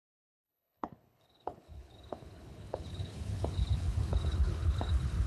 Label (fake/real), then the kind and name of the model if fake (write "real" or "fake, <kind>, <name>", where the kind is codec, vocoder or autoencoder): fake, codec, HILCodec